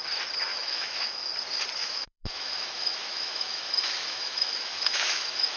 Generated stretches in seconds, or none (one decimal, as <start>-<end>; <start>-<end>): 0.5-1.3; 1.8-5.6